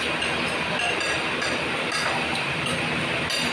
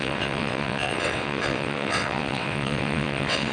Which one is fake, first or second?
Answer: second